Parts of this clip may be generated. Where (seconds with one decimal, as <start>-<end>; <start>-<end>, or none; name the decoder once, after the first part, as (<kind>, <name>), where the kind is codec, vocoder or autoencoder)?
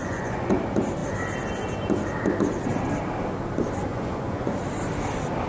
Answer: 0.0-0.6 (vocoder, Vocos); 3.9-4.5